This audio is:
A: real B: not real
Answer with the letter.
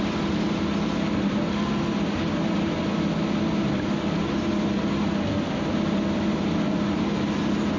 A